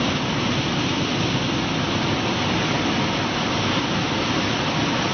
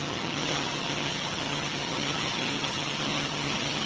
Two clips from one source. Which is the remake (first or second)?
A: second